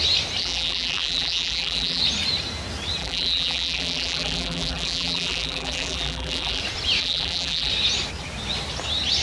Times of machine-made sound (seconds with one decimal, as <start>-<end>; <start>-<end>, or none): 0.4-2.0; 3.0-6.6; 7.0-7.7